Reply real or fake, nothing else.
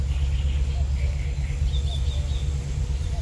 real